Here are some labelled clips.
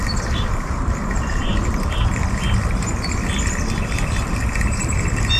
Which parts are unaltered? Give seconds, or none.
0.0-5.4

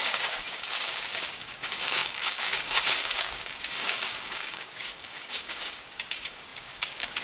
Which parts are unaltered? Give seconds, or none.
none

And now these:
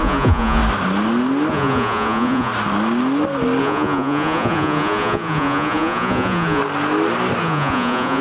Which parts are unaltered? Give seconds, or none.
0.6-1.5; 2.5-3.6; 6.6-7.4